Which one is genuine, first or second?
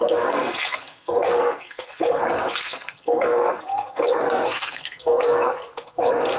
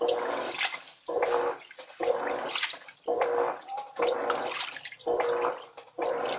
second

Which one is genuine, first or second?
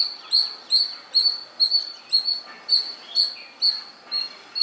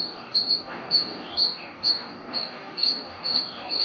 first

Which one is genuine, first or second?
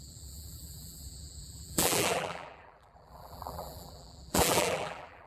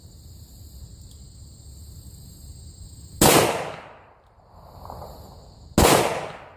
second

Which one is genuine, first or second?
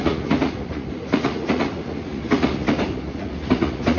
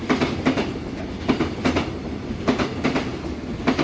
second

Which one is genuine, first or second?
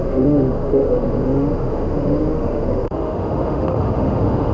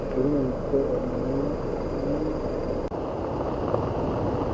second